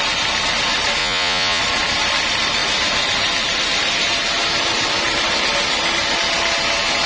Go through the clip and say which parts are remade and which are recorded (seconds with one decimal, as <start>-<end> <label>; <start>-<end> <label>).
0.0-1.0 recorded; 1.0-1.6 remade; 1.6-7.1 recorded